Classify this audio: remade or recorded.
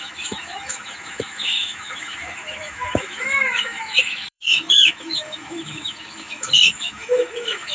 remade